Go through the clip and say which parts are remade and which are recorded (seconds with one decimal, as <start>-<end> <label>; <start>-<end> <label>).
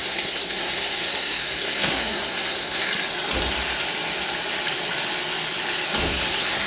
0.0-2.9 remade; 2.9-6.1 recorded; 6.1-6.7 remade